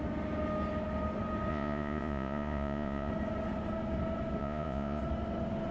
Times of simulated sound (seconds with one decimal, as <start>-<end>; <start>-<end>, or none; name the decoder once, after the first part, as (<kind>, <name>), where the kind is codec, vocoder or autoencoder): 1.5-3.1 (vocoder, Vocos); 4.4-5.0